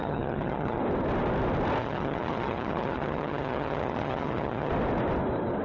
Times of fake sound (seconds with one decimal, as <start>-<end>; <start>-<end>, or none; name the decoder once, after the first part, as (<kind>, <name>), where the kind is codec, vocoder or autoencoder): 0.0-0.8 (vocoder, HiFi-GAN); 1.8-4.7